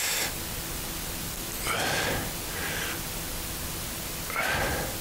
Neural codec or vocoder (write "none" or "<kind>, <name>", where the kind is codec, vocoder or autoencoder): none